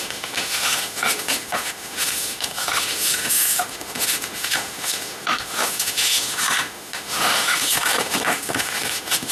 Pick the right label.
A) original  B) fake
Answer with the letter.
B